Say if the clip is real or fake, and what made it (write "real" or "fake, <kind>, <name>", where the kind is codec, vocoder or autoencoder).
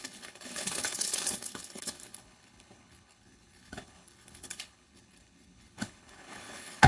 fake, codec, HILCodec